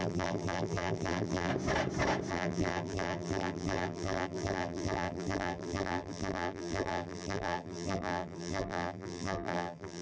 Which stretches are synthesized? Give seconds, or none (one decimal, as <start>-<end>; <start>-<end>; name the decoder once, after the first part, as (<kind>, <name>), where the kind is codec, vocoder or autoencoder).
0.0-1.5 (vocoder, BigVGAN v2); 2.3-10.0